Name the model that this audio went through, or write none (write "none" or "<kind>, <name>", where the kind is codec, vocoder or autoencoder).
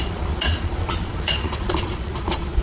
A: vocoder, Vocos